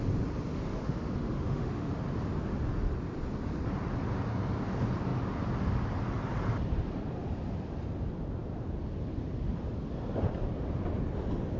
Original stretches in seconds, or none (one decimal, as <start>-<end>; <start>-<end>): 0.0-0.5; 2.0-11.6